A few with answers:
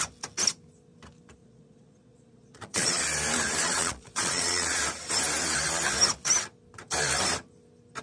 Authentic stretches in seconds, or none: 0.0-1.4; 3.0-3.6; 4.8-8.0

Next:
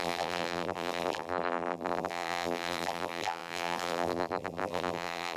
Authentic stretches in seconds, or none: none

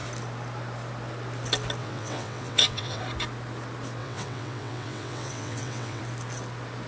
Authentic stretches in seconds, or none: 0.0-1.8; 3.0-4.0; 6.0-6.9

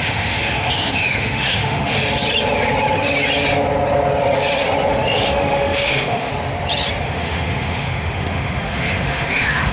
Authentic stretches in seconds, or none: 2.0-4.9; 6.3-7.0

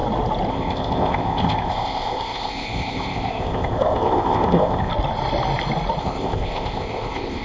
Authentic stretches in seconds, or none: 0.0-0.5; 4.9-6.0

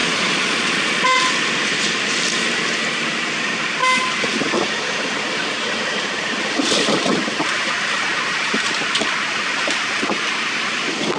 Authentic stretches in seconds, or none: 1.2-11.2

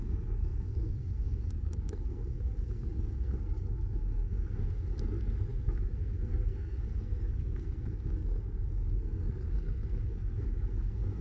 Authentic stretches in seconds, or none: none

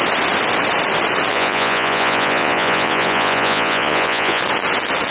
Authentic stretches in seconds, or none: 0.0-1.3; 4.4-5.1